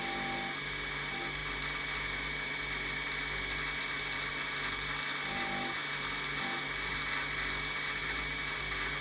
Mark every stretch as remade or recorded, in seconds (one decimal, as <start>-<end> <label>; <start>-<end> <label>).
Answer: 0.0-8.0 recorded; 8.0-8.6 remade; 8.6-9.0 recorded